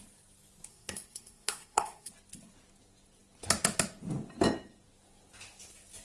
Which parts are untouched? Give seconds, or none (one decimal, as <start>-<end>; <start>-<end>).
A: 0.0-0.7; 2.1-6.0